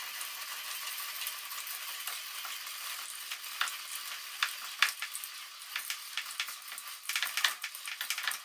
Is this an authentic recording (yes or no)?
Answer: yes